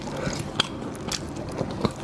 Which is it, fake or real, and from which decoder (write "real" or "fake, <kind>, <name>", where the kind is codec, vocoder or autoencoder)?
real